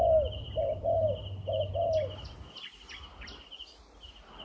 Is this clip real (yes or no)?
yes